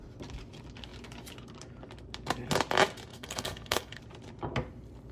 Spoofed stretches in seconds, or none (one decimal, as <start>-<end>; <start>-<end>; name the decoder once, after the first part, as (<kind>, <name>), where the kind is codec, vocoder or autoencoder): 3.1-4.0 (codec, SNAC)